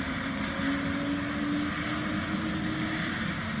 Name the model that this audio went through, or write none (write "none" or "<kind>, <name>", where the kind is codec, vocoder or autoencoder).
none